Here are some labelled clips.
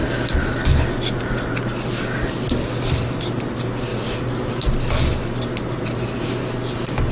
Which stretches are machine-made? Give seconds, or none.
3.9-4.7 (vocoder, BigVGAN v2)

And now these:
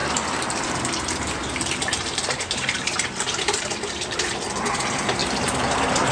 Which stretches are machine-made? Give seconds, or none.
0.0-0.8 (vocoder, BigVGAN v2); 1.4-4.3; 5.2-6.1